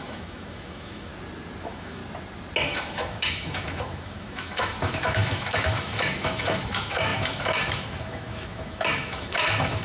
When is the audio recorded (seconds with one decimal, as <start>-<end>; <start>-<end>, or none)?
1.1-1.6; 2.0-2.6